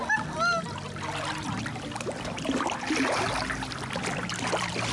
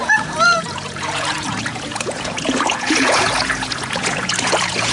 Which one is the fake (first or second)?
second